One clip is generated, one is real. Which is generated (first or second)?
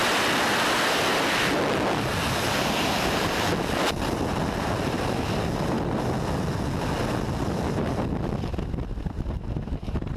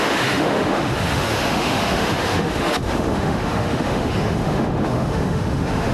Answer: second